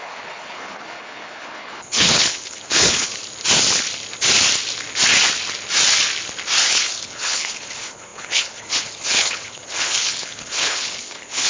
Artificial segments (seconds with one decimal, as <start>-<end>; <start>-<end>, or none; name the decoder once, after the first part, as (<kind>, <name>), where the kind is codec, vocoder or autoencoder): 0.0-3.1 (codec, HILCodec); 6.7-11.5